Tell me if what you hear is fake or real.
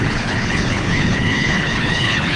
fake